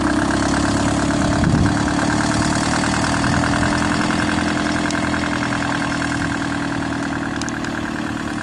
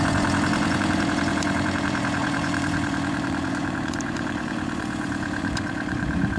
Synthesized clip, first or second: second